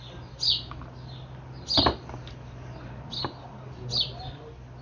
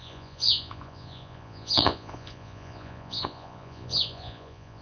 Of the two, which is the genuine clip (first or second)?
first